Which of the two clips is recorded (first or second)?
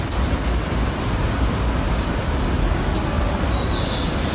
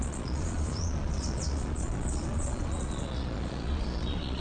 first